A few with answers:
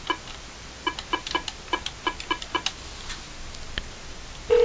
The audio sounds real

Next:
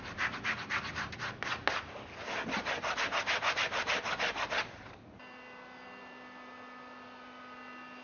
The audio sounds real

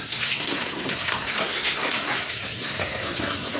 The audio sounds fake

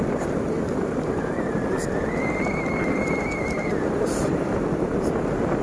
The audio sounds real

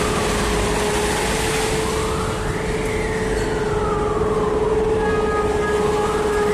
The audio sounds real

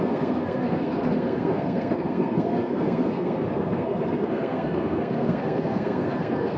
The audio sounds fake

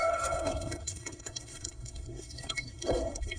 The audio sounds fake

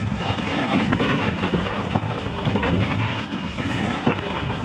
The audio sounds fake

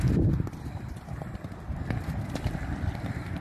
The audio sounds real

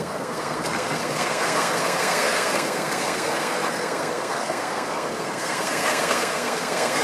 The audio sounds fake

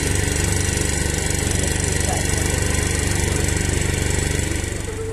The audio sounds real